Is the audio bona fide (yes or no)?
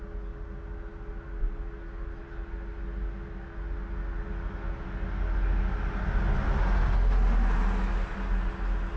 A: yes